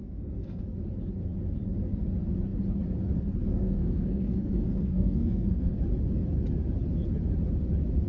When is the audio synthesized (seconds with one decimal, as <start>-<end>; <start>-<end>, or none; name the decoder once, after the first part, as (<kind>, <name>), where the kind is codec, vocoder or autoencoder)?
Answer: 0.0-0.6 (codec, SNAC); 3.5-5.8

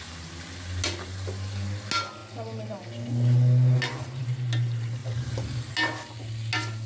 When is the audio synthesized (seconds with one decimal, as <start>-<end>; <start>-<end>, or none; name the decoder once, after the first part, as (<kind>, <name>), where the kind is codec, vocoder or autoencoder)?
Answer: none

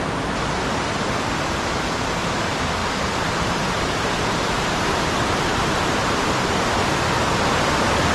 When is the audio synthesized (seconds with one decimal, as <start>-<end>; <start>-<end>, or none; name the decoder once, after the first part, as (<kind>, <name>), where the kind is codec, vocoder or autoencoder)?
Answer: 2.8-6.4 (vocoder, BigVGAN v2)

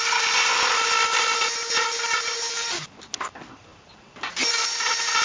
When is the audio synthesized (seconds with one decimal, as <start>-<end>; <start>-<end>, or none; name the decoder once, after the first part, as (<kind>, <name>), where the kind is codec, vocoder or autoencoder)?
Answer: none

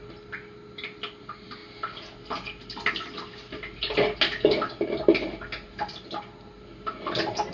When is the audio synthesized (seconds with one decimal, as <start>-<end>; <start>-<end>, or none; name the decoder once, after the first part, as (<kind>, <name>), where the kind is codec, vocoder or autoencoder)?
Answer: none